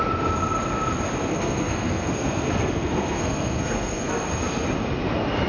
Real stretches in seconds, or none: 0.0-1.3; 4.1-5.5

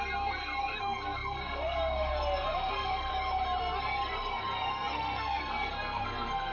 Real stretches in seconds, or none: 3.1-3.6

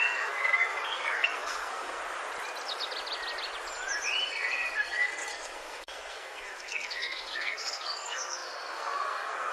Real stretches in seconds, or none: 2.0-4.3

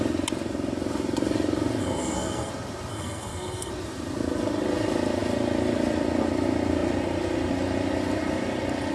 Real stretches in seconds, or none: 0.0-1.8; 2.5-2.9; 3.7-8.9